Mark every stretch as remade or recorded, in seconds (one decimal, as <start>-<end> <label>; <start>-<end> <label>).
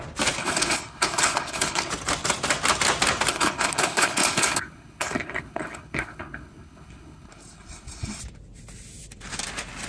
0.0-0.4 recorded; 0.4-1.9 remade; 1.9-3.3 recorded; 3.3-8.2 remade; 8.2-9.9 recorded